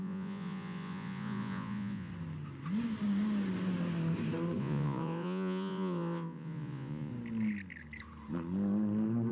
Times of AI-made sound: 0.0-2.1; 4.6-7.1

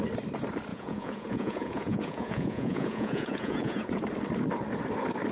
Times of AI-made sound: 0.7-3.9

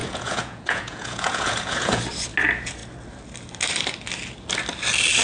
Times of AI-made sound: 0.0-2.0

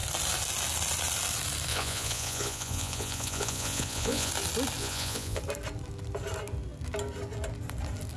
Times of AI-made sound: 1.7-4.3; 4.8-5.4

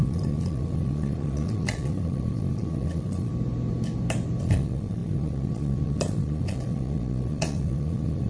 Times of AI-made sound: 0.0-3.3; 4.4-8.3

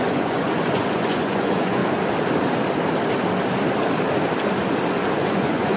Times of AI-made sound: 0.0-1.8; 5.0-5.8

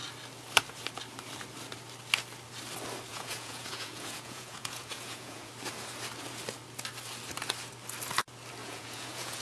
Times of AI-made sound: 3.1-5.5; 8.6-9.4

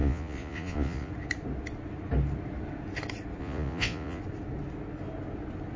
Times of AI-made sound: 0.0-1.1; 3.4-4.2